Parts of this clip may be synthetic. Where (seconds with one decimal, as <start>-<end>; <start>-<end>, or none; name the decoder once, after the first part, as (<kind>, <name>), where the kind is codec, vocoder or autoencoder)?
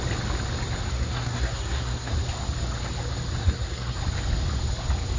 0.9-2.1 (codec, SNAC); 3.4-4.0